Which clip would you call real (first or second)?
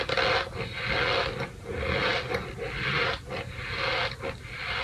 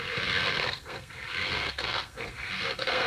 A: first